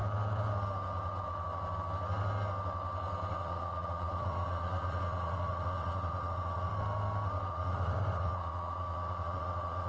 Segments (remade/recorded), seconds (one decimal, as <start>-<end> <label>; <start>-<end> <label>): 0.0-3.3 recorded; 3.3-6.7 remade; 6.7-7.5 recorded; 7.5-9.9 remade